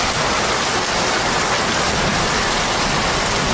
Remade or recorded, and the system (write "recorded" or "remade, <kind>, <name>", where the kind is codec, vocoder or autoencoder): recorded